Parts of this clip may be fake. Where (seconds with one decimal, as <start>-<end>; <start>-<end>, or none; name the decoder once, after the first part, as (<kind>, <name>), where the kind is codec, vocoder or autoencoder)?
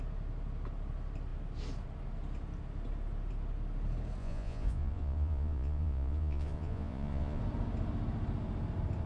4.2-7.4 (vocoder, Vocos)